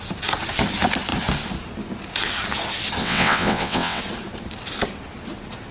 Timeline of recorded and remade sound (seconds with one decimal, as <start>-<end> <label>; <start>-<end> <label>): 0.0-3.0 recorded; 3.0-4.0 remade; 4.0-5.7 recorded

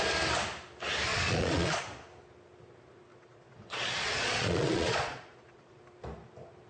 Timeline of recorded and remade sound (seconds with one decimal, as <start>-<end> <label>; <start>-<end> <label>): 0.0-1.1 recorded; 1.1-1.8 remade; 1.8-3.1 recorded; 3.1-5.8 remade; 5.8-6.7 recorded

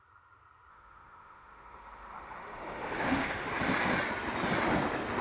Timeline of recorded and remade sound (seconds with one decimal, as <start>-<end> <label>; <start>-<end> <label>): 0.0-0.7 recorded; 0.7-3.5 remade; 3.5-5.2 recorded

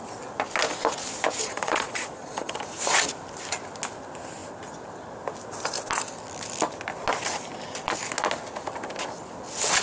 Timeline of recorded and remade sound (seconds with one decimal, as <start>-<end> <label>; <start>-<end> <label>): 0.0-1.4 recorded; 1.4-2.5 remade; 2.5-9.8 recorded

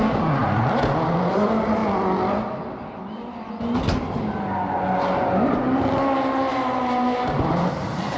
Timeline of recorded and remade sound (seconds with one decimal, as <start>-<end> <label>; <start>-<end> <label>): 0.0-6.5 recorded; 6.5-7.7 remade; 7.7-8.2 recorded

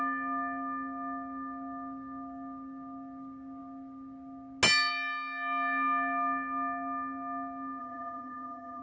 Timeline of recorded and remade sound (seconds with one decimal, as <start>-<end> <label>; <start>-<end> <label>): 0.0-7.8 recorded; 7.8-8.8 remade

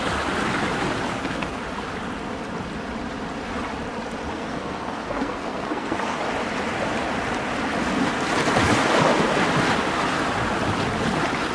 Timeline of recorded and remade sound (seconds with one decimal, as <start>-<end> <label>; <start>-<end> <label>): 0.0-1.1 recorded; 1.1-1.6 remade; 1.6-4.3 recorded; 4.3-6.2 remade; 6.2-11.5 recorded